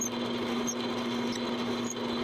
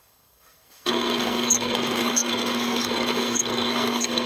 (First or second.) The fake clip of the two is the second